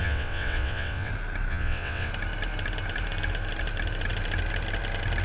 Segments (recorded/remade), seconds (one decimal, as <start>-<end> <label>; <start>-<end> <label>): 0.0-1.1 remade; 1.1-1.5 recorded; 1.5-2.1 remade; 2.1-5.2 recorded